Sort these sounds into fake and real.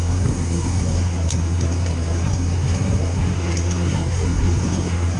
fake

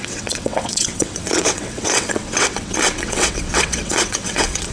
fake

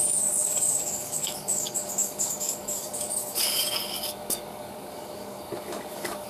fake